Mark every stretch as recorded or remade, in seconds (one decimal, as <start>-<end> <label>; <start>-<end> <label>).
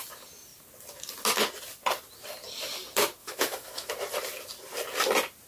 0.0-3.2 recorded; 3.2-3.9 remade; 3.9-5.5 recorded